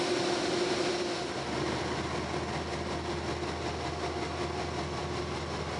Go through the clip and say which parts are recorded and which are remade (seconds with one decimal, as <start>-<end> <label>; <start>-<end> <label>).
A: 0.0-5.8 recorded